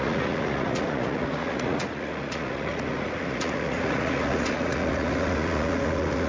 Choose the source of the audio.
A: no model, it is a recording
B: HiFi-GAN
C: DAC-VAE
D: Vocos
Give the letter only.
D